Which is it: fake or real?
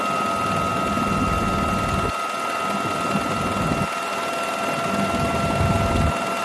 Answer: real